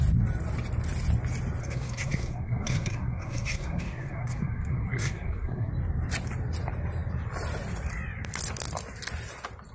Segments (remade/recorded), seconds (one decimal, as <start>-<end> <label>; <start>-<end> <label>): 0.0-1.6 recorded; 1.6-5.7 remade; 5.7-9.7 recorded